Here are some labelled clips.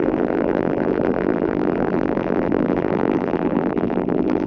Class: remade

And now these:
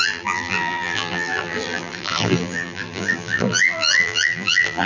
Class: remade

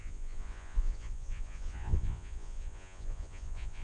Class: remade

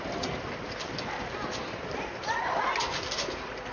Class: recorded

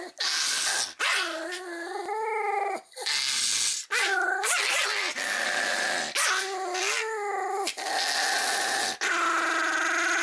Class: recorded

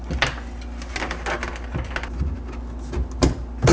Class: recorded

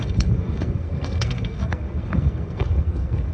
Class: remade